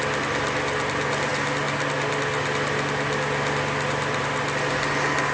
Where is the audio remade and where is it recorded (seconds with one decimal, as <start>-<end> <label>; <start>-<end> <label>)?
0.0-5.3 recorded